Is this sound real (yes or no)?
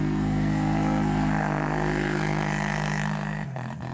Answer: no